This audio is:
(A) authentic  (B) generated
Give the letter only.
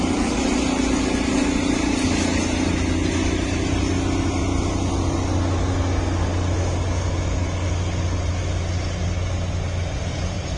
A